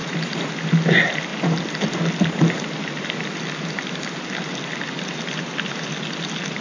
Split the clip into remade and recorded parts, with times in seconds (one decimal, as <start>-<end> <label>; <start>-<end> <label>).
0.0-0.7 remade; 0.7-1.3 recorded; 1.3-3.5 remade; 3.5-6.6 recorded